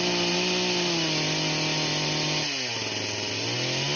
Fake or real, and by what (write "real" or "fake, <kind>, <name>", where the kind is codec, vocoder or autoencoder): real